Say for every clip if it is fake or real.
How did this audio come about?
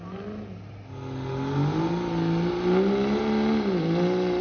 real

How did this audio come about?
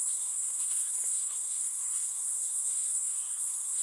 fake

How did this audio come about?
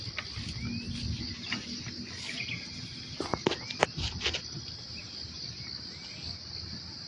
real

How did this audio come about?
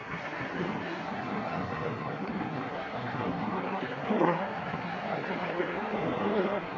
fake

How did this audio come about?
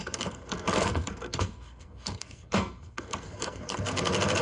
fake